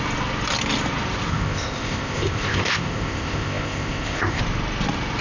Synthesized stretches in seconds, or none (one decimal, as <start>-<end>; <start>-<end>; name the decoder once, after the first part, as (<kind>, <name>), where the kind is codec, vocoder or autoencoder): 1.3-4.4 (codec, ZipCodec)